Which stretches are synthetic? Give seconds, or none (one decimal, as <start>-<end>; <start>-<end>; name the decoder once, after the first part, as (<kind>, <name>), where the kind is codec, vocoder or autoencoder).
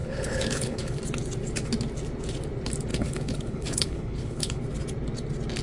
0.0-1.0 (codec, HILCodec); 2.9-4.6